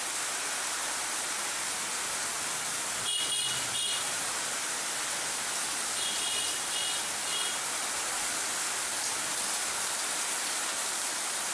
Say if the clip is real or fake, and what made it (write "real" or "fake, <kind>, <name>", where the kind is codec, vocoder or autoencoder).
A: real